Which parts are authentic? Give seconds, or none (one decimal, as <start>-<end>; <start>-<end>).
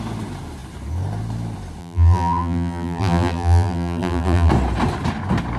0.0-1.8; 4.5-5.6